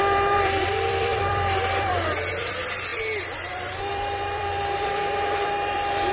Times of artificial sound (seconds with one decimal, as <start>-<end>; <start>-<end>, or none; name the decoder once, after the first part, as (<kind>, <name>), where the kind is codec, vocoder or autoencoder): 0.0-6.1 (vocoder, BigVGAN v2)